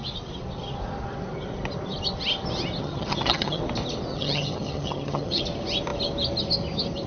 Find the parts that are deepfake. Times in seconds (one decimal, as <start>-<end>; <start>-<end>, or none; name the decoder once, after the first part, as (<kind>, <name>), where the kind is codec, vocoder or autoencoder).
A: 2.8-3.6 (vocoder, HiFi-GAN); 4.1-5.4